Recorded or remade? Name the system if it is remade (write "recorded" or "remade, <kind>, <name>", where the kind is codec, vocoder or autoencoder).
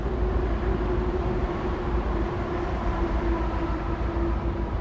remade, vocoder, BigVGAN v2